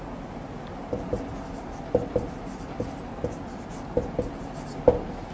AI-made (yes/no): no